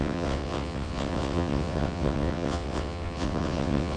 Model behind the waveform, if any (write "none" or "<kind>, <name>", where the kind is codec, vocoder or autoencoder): vocoder, WaveNeXt